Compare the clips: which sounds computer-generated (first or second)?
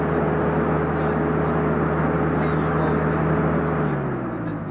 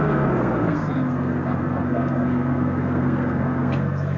second